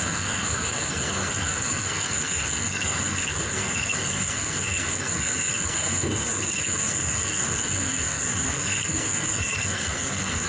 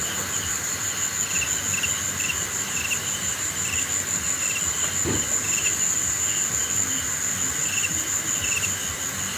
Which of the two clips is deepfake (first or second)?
first